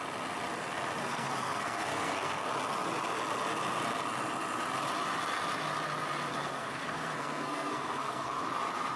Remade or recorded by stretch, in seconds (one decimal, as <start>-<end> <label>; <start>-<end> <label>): 0.0-1.0 recorded; 1.0-2.5 remade; 2.5-6.3 recorded; 6.3-8.4 remade; 8.4-9.0 recorded